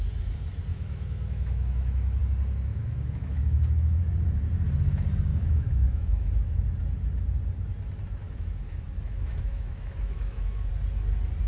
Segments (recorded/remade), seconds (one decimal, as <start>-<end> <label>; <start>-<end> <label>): 0.0-0.7 recorded; 0.7-2.2 remade; 2.2-2.7 recorded; 2.7-4.0 remade; 4.0-5.3 recorded; 5.3-6.6 remade; 6.6-8.2 recorded; 8.2-10.7 remade; 10.7-11.5 recorded